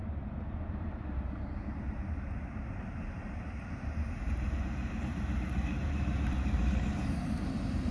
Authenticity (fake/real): fake